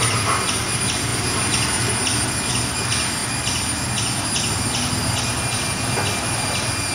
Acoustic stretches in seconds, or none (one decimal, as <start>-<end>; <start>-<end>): 0.0-6.9